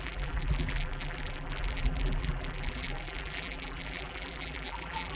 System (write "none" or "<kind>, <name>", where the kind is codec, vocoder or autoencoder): vocoder, BigVGAN v2